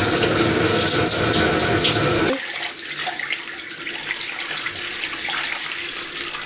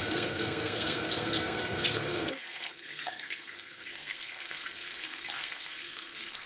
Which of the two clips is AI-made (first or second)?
second